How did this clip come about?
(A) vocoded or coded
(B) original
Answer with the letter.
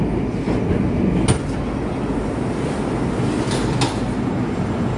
B